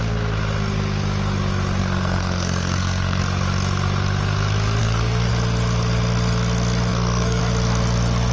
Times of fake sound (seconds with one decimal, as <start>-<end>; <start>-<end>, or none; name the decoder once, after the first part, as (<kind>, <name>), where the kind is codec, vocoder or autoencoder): 1.8-3.2 (codec, SNAC); 4.8-5.3; 6.9-7.4